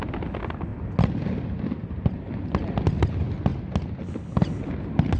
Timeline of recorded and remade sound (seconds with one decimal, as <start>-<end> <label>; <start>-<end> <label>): 0.0-5.2 recorded